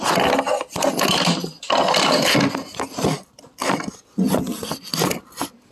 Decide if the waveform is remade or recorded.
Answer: recorded